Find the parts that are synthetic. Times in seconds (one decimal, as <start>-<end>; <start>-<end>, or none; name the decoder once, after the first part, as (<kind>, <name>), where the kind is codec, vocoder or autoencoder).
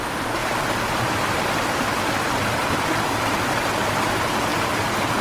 0.4-3.5 (vocoder, BigVGAN v2)